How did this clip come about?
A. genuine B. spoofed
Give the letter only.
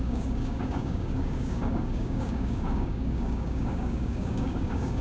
B